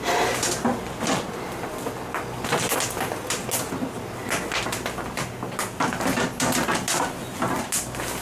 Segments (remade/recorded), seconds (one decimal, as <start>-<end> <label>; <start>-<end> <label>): 0.0-8.2 recorded